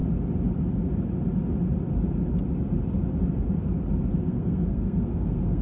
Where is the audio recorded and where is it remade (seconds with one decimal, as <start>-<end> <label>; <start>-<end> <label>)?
0.0-4.2 recorded; 4.2-5.6 remade